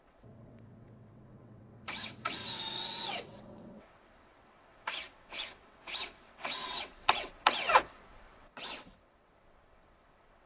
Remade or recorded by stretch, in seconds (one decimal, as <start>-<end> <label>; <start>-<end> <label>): 0.0-10.5 remade